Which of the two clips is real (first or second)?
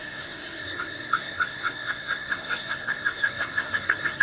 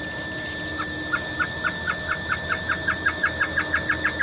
second